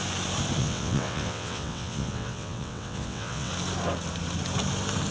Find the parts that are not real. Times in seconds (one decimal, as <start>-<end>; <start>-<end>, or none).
0.6-3.5